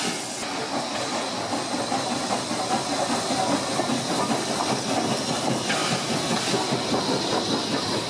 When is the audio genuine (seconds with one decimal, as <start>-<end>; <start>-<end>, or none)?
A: 0.0-8.1